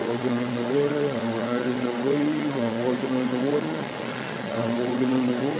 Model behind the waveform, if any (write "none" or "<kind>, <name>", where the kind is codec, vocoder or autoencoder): vocoder, WaveNeXt